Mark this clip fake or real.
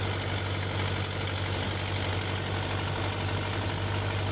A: real